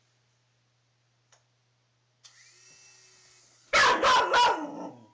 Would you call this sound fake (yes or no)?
no